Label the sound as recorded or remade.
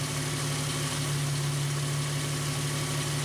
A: recorded